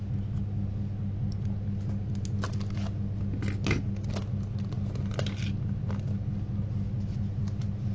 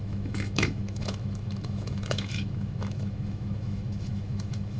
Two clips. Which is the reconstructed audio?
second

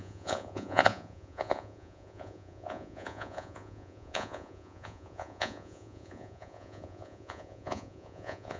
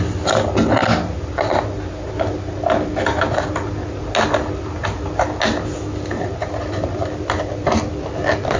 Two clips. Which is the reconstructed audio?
first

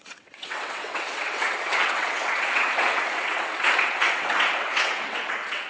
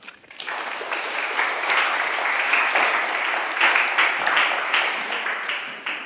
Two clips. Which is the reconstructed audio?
first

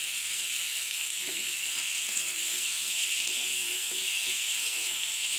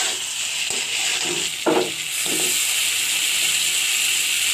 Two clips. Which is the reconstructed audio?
first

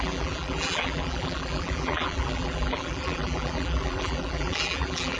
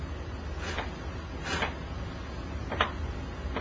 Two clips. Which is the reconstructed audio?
first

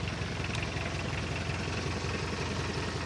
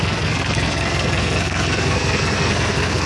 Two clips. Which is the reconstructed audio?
second